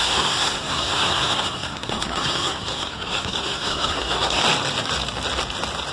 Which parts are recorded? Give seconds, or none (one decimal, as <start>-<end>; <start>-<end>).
4.4-5.9